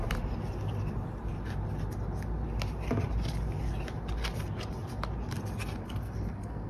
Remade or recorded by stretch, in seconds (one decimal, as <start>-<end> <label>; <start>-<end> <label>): 0.0-5.8 recorded; 5.8-6.7 remade